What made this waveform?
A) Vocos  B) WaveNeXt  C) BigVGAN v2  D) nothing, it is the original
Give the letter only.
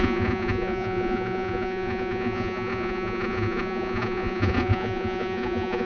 A